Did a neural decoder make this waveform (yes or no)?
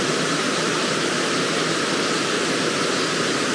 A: no